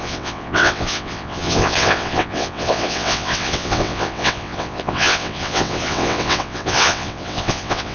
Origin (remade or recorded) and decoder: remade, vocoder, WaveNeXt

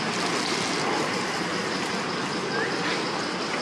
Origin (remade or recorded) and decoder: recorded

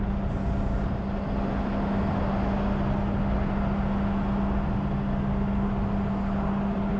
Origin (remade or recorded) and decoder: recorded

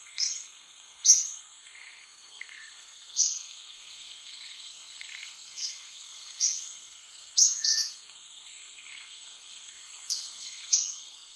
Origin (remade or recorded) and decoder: remade, codec, SNAC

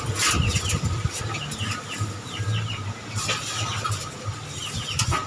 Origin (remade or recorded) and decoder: recorded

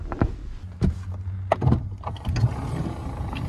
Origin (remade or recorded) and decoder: recorded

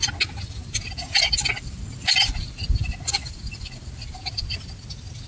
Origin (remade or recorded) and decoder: recorded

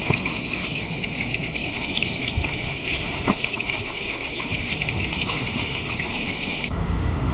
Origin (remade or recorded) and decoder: remade, autoencoder, DAC-VAE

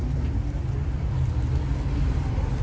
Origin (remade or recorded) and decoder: recorded